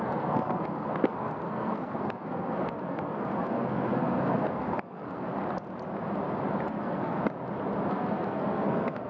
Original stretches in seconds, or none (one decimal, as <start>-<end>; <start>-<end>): 5.4-6.8; 7.2-7.9